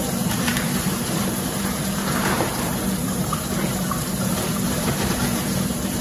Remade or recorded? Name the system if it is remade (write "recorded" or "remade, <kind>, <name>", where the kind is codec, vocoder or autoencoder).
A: remade, vocoder, BigVGAN v2